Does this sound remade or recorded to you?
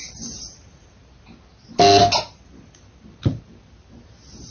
recorded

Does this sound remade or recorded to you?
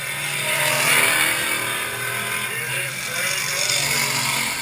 recorded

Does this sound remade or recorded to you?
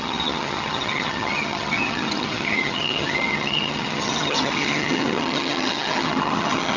remade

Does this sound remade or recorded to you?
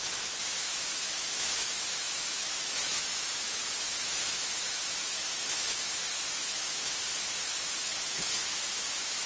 remade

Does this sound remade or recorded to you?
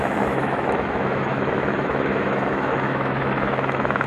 remade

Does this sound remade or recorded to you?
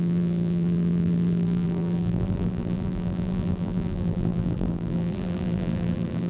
remade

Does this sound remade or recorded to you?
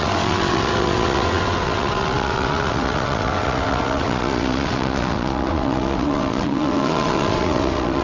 remade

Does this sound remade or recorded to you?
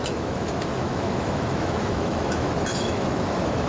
remade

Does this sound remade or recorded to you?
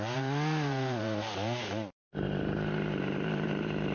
remade